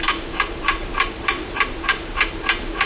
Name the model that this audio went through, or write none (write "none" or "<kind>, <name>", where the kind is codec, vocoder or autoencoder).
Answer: vocoder, BigVGAN v2